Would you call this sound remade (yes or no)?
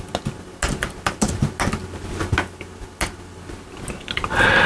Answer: no